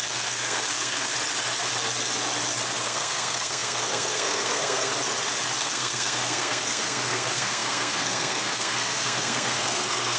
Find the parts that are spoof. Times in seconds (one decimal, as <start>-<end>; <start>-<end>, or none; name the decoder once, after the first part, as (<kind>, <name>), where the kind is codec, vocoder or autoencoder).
0.0-1.1 (codec, SNAC); 2.8-4.9; 5.6-10.2